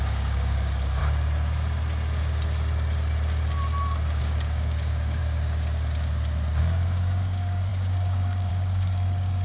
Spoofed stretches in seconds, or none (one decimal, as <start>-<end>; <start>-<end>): 0.0-1.0; 4.2-5.2; 6.6-9.4